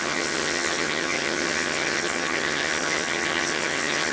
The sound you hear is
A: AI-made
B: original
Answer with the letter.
A